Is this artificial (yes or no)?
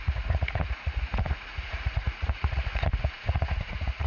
yes